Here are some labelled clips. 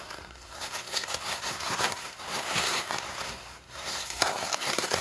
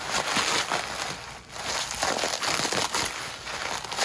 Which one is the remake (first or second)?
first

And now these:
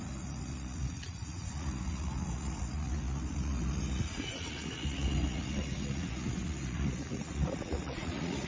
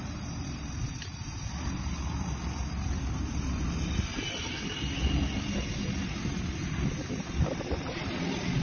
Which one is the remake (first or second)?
first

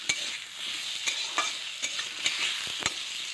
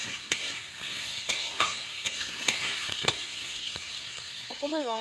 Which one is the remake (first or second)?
second